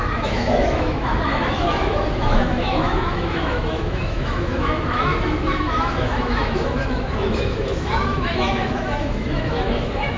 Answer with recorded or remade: remade